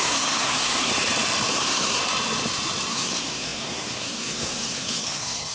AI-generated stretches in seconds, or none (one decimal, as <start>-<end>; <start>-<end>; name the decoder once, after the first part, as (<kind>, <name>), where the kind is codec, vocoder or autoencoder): 0.0-0.9 (codec, SNAC); 1.5-2.0; 2.9-5.5